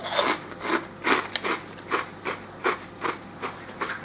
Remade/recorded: recorded